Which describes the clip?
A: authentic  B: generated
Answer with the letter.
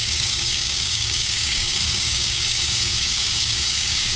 B